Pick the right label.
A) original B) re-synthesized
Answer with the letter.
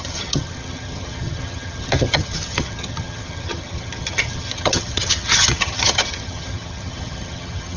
B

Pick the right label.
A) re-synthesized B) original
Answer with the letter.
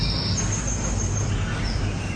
B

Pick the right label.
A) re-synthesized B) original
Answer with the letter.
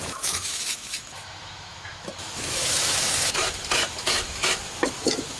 A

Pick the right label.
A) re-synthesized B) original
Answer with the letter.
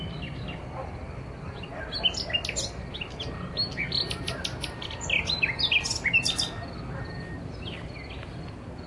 B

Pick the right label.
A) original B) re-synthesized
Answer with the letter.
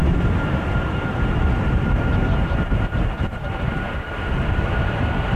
B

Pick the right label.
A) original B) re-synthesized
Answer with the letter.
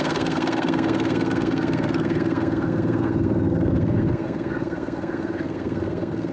B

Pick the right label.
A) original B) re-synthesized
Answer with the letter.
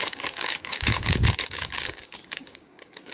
B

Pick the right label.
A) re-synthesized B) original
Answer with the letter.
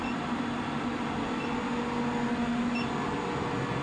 B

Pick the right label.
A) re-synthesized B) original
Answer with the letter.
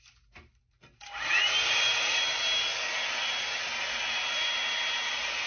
B